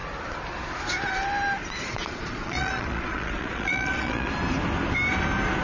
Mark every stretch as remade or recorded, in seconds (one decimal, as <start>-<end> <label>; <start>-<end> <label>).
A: 0.0-1.8 recorded; 1.8-4.3 remade; 4.3-5.6 recorded